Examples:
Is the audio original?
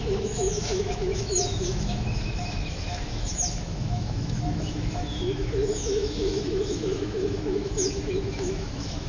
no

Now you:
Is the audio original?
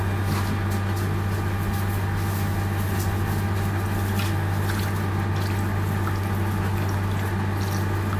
yes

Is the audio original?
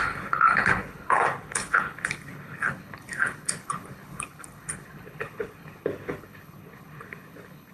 no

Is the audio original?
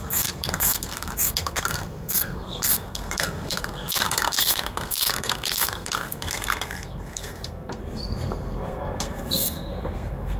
no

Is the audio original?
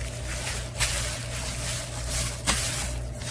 yes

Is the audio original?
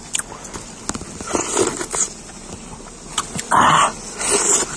yes